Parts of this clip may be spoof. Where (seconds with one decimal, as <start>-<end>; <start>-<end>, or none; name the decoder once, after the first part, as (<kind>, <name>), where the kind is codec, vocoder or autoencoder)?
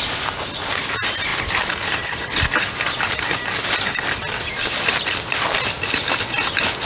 none